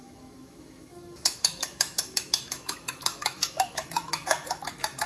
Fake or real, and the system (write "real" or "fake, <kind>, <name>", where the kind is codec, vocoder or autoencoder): fake, autoencoder, DAC-VAE